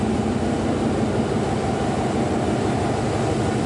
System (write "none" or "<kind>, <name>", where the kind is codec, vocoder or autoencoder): none